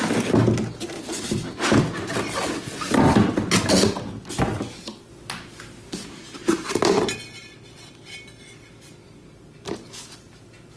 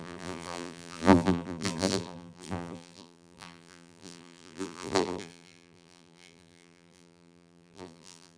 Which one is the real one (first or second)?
first